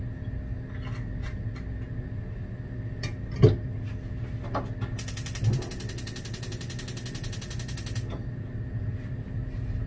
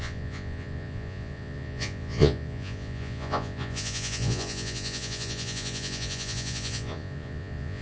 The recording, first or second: first